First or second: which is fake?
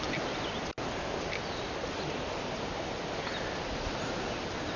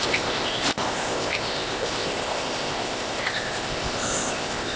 second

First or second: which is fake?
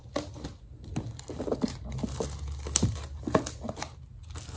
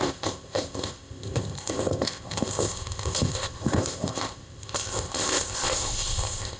second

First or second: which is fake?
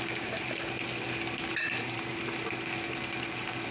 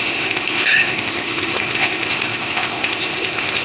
second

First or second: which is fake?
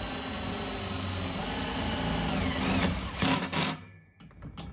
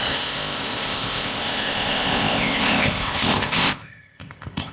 second